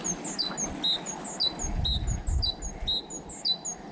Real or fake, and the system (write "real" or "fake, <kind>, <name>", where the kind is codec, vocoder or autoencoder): real